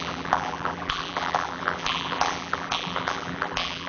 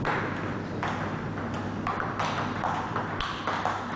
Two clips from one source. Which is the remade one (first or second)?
first